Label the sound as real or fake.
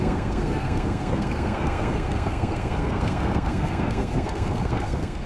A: fake